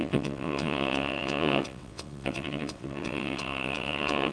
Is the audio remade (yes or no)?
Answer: yes